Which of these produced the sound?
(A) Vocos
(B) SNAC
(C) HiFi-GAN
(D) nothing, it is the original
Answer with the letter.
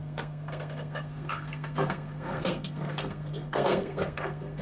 B